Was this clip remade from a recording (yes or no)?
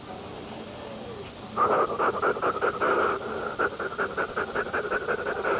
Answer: no